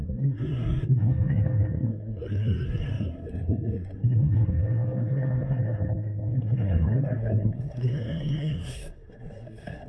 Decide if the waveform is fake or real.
fake